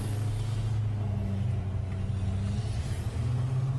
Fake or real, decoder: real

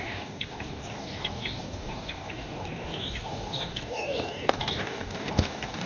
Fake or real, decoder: fake, codec, DAC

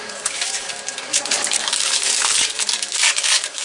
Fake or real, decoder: fake, codec, DAC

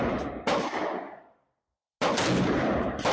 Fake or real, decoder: real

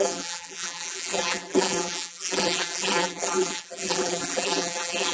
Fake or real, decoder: fake, vocoder, BigVGAN v2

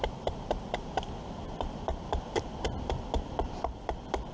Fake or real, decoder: fake, vocoder, BigVGAN v2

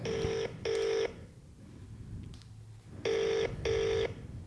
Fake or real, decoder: real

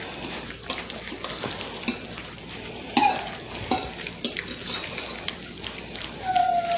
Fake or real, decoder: real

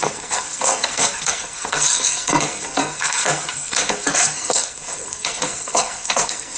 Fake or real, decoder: fake, codec, SNAC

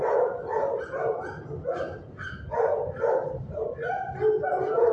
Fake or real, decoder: real